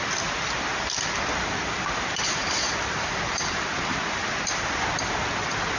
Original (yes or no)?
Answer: no